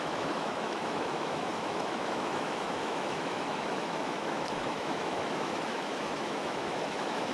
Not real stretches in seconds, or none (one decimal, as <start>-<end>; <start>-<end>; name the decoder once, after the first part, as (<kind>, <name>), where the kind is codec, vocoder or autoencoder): 0.0-7.3 (autoencoder, DAC-VAE)